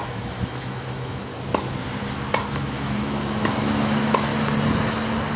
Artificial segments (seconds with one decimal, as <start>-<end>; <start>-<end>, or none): 0.0-1.3; 2.5-4.3

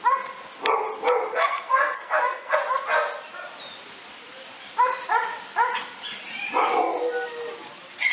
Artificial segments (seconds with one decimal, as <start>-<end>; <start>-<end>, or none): 1.3-2.6

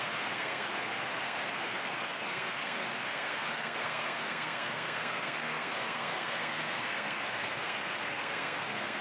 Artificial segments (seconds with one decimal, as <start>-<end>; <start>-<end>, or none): 0.0-9.0